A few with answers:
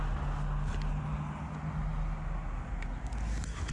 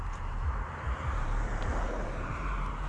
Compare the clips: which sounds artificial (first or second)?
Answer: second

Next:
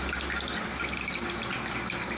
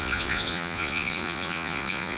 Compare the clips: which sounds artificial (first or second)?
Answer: second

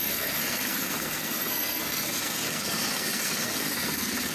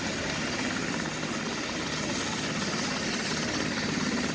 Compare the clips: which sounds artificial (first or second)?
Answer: first